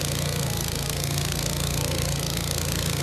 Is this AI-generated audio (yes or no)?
yes